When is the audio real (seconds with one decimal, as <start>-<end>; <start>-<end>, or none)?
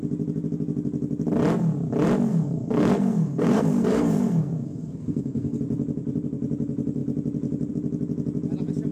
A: 0.0-2.3; 5.6-8.9